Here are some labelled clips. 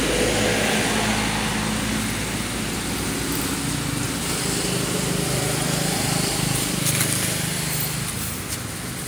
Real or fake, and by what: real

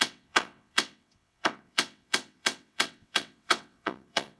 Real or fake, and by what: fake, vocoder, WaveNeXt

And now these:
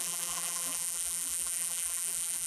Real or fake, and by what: fake, vocoder, BigVGAN v2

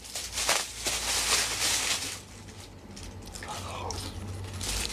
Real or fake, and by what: real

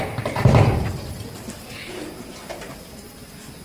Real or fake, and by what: real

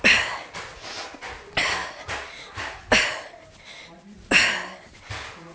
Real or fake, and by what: real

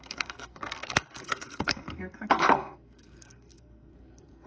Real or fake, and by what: fake, codec, SNAC